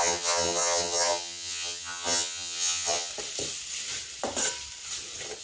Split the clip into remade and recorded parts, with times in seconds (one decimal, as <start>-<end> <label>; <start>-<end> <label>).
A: 0.0-3.1 remade; 3.1-5.4 recorded